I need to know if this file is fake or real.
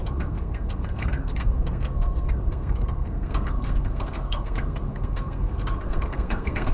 fake